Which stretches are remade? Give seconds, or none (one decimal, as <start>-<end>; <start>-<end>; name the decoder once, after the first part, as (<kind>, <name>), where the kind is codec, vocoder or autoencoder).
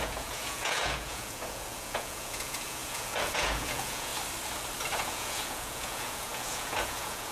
0.0-4.1 (vocoder, Vocos); 4.8-7.3